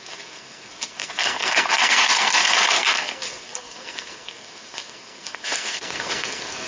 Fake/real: fake